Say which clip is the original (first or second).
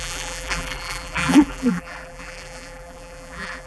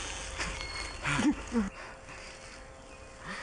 second